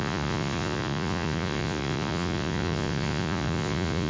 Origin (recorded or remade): remade